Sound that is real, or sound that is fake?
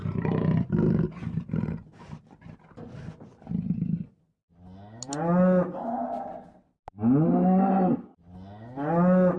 real